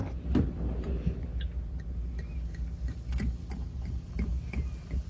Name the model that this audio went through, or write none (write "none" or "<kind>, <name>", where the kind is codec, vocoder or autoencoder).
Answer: none